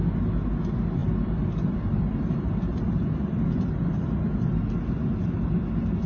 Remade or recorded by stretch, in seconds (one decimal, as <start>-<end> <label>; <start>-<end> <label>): 0.0-1.0 recorded; 1.0-4.7 remade; 4.7-6.1 recorded